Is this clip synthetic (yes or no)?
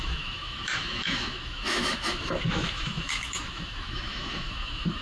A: yes